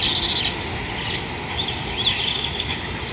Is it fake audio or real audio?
real